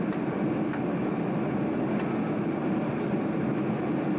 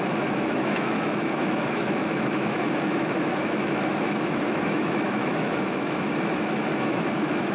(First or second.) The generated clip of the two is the second